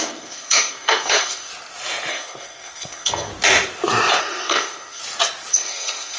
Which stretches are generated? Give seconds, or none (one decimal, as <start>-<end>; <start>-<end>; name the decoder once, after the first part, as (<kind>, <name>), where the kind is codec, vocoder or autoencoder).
0.0-1.5 (codec, SNAC); 2.1-3.3; 4.2-5.0; 5.5-6.2